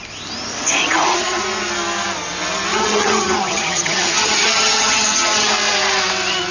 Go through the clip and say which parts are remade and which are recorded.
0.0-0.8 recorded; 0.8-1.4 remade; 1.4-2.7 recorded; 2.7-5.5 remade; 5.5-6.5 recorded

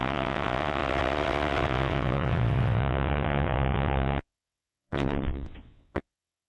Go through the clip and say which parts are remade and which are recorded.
0.0-6.5 remade

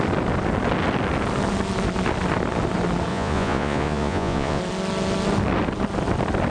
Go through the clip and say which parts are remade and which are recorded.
0.0-3.1 recorded; 3.1-4.6 remade; 4.6-6.5 recorded

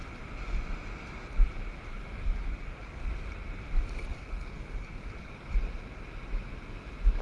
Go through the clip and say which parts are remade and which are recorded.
0.0-1.9 recorded; 1.9-3.1 remade; 3.1-4.1 recorded; 4.1-5.5 remade; 5.5-7.2 recorded

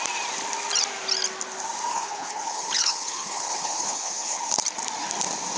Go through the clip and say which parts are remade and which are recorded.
0.0-1.9 recorded; 1.9-4.4 remade; 4.4-5.6 recorded